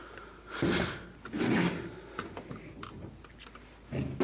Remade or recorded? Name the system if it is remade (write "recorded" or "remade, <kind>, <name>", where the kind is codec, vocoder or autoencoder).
recorded